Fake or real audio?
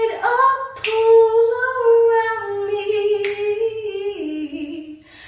real